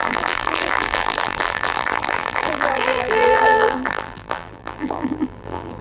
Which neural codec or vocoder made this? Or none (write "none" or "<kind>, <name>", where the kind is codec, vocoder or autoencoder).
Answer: vocoder, BigVGAN v2